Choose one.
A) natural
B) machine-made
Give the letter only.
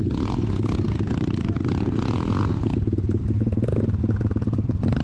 A